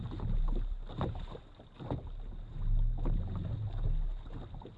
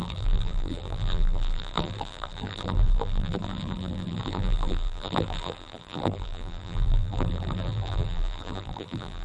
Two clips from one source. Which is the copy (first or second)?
second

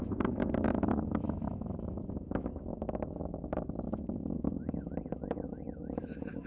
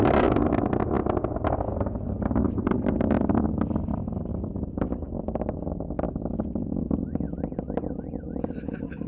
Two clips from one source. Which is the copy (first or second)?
first